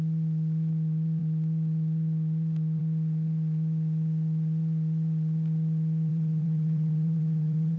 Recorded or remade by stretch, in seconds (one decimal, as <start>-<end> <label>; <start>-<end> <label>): 0.0-6.1 recorded; 6.1-7.8 remade